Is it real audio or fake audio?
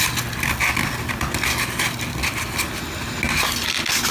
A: real